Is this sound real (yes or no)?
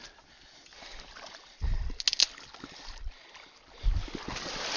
yes